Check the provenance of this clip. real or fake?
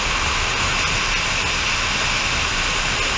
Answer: real